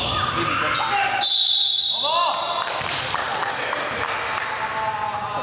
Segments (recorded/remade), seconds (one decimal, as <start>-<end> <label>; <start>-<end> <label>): 0.0-5.4 recorded